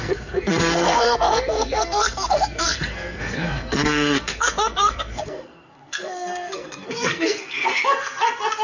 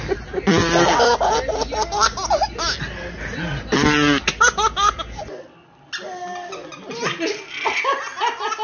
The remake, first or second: first